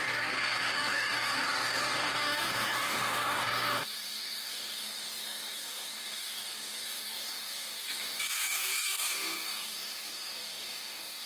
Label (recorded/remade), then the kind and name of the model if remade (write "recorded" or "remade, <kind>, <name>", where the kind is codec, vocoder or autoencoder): remade, codec, DAC